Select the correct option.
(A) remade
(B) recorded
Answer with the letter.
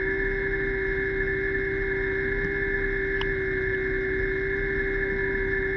B